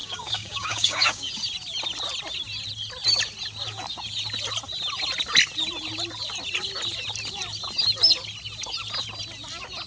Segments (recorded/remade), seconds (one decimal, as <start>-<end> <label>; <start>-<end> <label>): 0.0-1.3 remade; 1.3-9.9 recorded